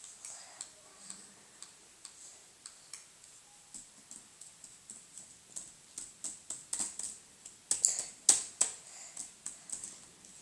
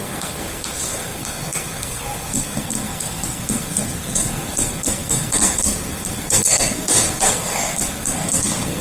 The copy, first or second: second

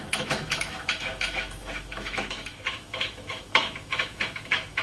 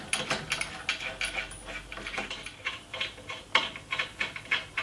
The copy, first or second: first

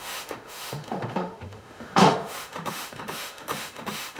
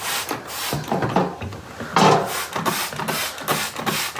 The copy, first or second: first